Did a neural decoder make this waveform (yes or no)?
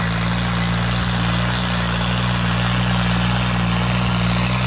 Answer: no